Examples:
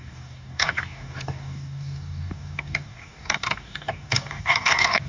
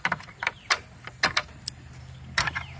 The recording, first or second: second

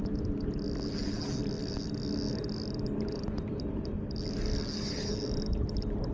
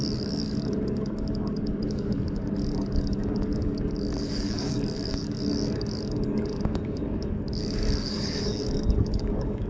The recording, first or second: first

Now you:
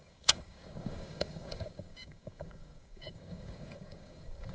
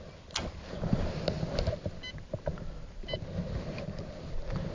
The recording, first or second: second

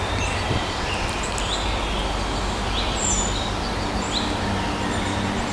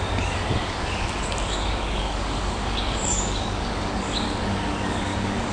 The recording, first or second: first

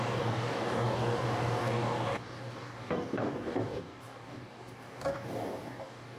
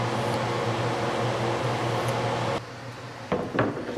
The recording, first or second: second